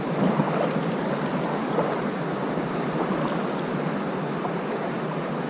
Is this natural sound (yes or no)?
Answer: yes